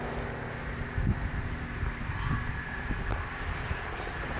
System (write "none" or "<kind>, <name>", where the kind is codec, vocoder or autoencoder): none